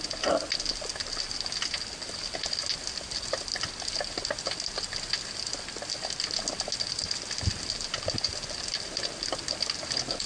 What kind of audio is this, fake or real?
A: real